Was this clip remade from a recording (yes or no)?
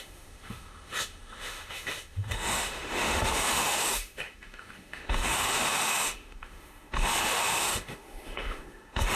yes